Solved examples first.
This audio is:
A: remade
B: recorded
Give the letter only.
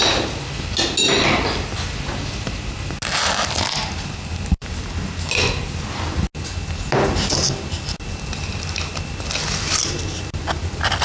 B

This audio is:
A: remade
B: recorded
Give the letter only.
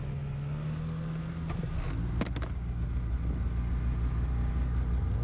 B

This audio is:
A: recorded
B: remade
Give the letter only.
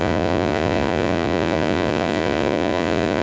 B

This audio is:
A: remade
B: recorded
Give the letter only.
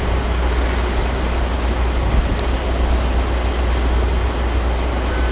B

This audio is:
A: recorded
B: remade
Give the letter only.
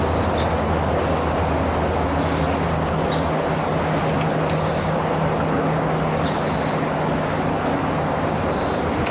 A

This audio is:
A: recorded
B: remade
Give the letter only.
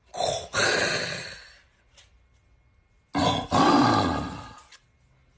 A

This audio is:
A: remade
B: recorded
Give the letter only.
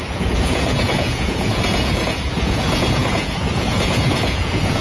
A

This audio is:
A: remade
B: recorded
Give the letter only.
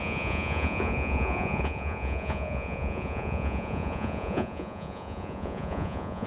A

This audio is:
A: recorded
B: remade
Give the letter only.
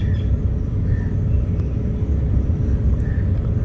A